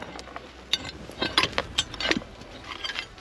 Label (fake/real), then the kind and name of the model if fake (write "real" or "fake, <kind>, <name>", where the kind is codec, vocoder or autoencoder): real